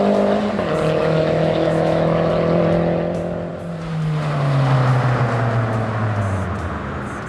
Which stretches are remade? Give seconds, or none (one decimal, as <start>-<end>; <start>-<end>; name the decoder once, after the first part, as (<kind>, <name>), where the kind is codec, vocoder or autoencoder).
1.0-2.3 (autoencoder, DAC-VAE)